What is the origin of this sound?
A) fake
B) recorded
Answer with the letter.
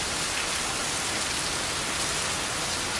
B